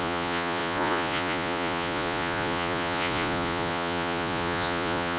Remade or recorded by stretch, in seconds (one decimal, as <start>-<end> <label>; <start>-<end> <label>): 0.0-5.2 remade